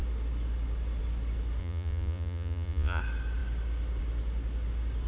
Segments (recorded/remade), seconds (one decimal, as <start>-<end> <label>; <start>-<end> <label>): 0.0-1.6 recorded; 1.6-3.0 remade; 3.0-5.1 recorded